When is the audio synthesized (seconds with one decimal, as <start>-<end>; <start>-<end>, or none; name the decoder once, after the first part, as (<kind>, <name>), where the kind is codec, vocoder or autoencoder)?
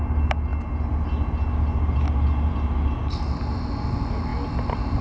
none